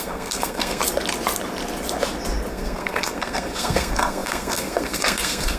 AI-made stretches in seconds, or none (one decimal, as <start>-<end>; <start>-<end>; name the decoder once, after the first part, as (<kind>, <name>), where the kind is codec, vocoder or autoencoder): 0.0-0.8 (codec, SNAC); 2.5-5.6